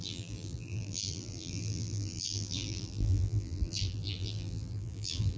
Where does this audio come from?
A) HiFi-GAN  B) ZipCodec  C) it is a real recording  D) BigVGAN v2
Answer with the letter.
D